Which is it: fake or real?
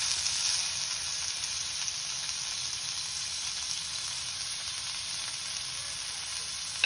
real